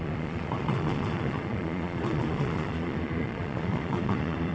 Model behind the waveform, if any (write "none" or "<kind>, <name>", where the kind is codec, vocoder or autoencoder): vocoder, Vocos